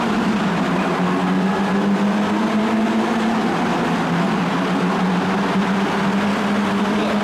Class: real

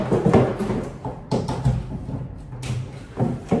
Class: real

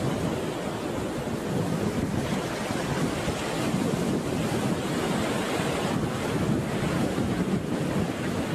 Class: real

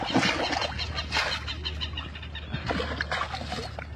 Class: real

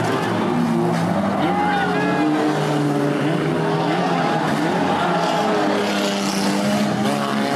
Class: real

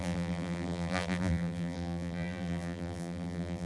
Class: fake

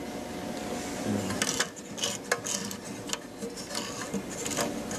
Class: real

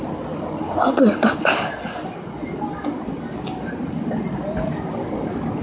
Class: real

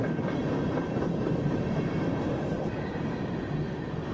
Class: fake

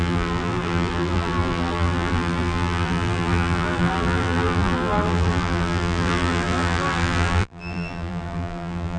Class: fake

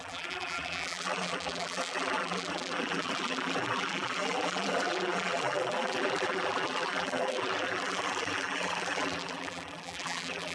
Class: fake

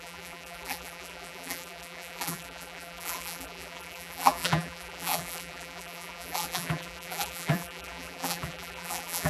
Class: fake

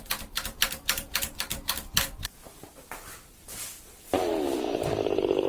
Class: fake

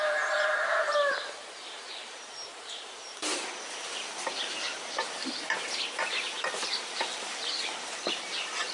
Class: fake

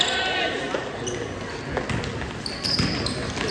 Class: real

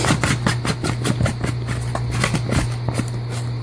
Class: real